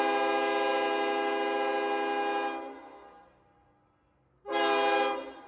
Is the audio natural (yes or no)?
yes